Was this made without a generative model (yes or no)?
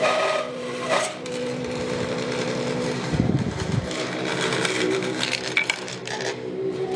no